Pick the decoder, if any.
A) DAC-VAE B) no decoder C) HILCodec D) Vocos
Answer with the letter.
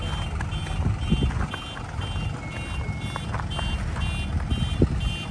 B